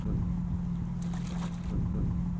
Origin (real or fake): real